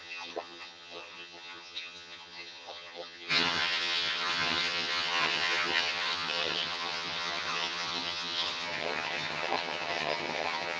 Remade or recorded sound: remade